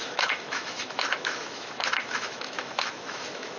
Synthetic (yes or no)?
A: yes